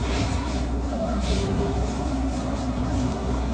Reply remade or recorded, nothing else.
remade